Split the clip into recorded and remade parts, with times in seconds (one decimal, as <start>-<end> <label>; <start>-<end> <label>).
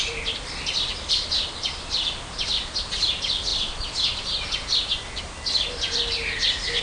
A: 0.0-3.5 recorded; 3.5-6.8 remade